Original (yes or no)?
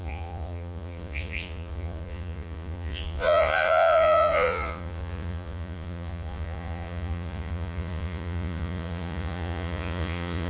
no